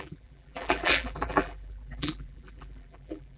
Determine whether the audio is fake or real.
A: fake